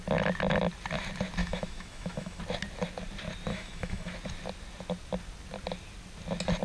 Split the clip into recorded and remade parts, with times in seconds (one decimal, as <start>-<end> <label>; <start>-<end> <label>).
0.0-1.4 recorded; 1.4-2.4 remade; 2.4-3.5 recorded; 3.5-4.1 remade; 4.1-6.6 recorded